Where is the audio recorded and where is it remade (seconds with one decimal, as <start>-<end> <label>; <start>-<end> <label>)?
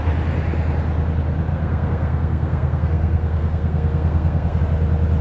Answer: 0.0-1.5 recorded; 1.5-4.6 remade; 4.6-5.2 recorded